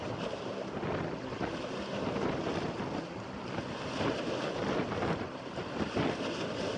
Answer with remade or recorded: recorded